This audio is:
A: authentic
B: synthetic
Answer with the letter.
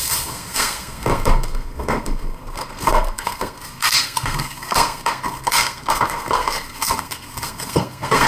B